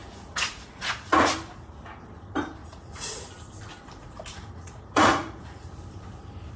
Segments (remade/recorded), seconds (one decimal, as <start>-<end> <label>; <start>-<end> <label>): 0.0-1.3 remade; 1.3-2.6 recorded; 2.6-3.3 remade; 3.3-4.0 recorded; 4.0-5.7 remade; 5.7-6.6 recorded